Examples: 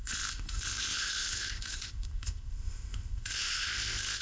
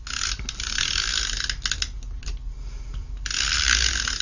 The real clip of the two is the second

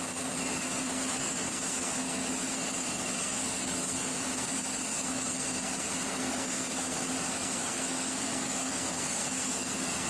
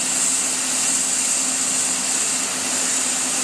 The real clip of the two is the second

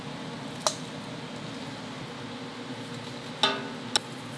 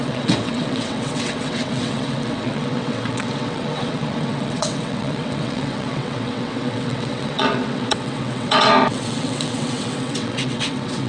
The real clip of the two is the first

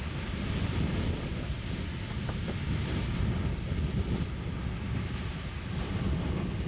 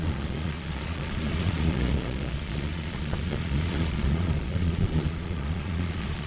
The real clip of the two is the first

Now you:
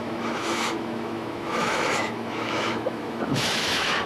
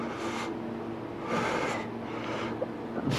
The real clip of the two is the second